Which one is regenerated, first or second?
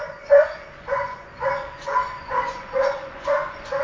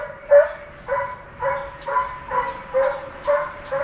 first